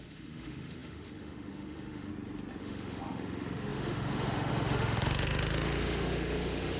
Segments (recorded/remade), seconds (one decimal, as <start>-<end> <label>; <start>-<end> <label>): 0.0-2.1 remade; 2.1-2.6 recorded; 2.6-6.8 remade